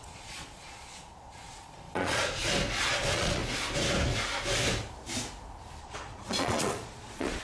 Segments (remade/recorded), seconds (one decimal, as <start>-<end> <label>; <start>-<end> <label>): 0.0-2.4 remade; 2.4-2.9 recorded; 2.9-3.4 remade; 3.4-5.8 recorded; 5.8-7.4 remade